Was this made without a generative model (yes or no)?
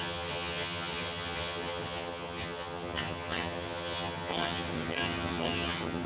no